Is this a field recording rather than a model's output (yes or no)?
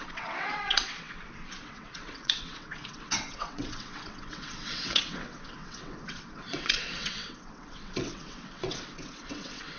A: no